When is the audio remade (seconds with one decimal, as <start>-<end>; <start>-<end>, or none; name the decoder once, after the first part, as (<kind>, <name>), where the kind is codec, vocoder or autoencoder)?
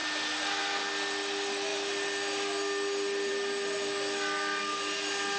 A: none